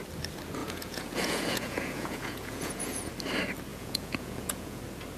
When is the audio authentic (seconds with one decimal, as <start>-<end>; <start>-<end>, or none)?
0.0-0.6; 3.1-3.7; 4.8-5.2